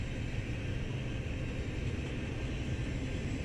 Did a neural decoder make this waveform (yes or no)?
no